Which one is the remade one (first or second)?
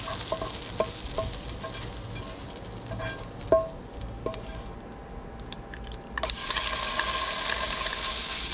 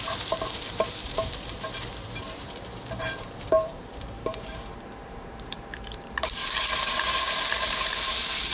second